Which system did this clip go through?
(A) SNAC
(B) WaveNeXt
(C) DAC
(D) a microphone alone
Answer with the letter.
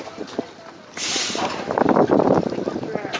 D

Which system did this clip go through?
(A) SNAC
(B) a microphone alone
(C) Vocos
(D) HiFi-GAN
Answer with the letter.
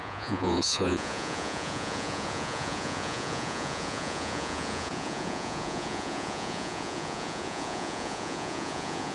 C